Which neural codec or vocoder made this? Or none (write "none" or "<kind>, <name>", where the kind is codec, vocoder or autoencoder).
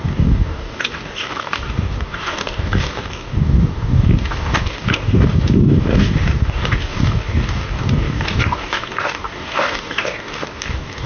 codec, DAC